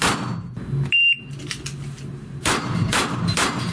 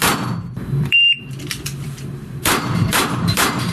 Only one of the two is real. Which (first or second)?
first